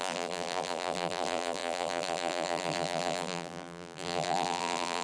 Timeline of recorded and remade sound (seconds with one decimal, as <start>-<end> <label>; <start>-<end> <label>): 0.0-5.0 remade